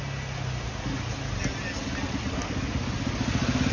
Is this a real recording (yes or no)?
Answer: yes